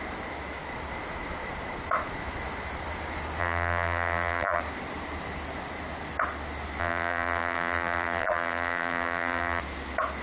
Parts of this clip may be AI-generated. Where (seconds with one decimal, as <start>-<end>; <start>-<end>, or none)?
3.4-4.6; 6.8-9.6

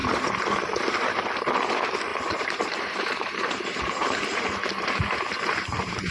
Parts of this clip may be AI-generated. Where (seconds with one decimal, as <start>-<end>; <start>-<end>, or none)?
0.0-1.2; 2.1-6.1

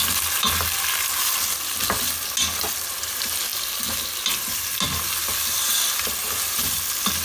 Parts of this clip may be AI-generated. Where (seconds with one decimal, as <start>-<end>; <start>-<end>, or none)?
none

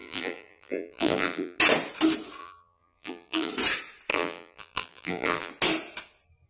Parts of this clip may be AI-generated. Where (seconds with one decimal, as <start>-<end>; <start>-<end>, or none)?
0.0-1.6; 2.4-3.5; 4.1-5.5

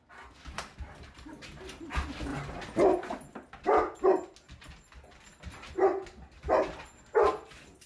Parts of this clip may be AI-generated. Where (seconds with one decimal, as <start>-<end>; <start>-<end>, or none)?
2.3-3.1